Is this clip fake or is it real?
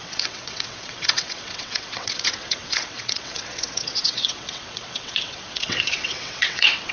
fake